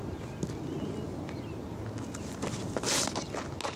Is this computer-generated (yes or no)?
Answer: no